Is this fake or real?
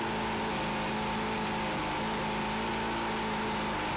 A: real